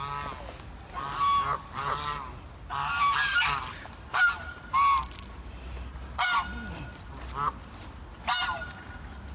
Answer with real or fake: real